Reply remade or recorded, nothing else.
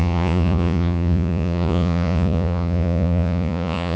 remade